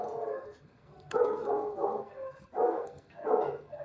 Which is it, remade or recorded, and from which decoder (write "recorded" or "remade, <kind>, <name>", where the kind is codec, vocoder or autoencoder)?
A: remade, codec, SNAC